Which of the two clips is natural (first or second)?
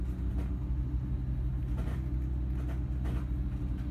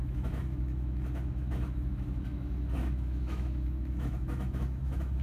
first